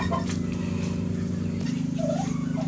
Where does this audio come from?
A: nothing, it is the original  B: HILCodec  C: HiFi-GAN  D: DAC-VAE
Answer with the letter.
A